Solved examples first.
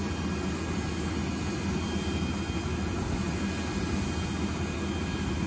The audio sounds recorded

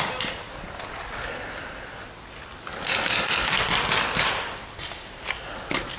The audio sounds recorded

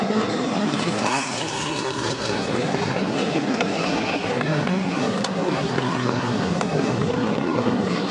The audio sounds remade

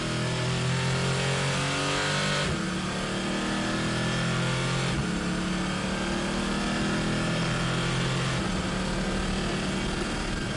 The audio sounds recorded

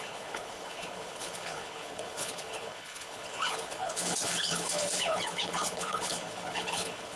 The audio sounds remade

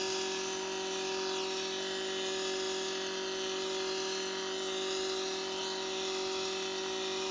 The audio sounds recorded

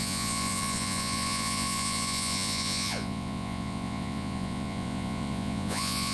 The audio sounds remade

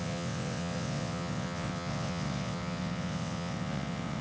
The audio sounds remade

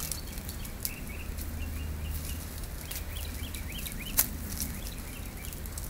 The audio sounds recorded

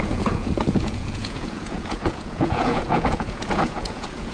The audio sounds remade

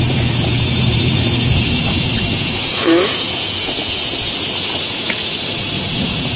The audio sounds remade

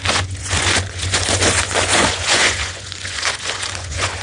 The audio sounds remade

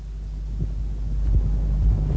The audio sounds recorded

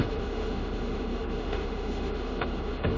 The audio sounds remade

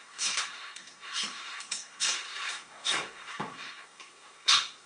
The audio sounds remade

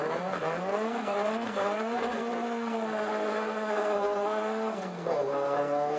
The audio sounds remade